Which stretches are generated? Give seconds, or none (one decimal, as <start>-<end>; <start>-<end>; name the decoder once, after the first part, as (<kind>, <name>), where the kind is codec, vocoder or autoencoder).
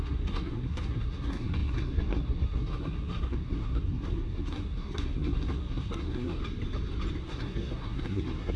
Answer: 0.0-6.4 (codec, SNAC); 7.2-8.6